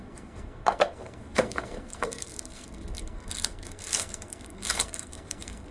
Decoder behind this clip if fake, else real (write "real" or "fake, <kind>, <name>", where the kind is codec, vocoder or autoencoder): fake, codec, SNAC